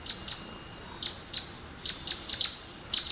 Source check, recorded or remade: recorded